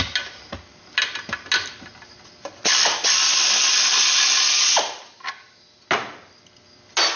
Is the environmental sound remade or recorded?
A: recorded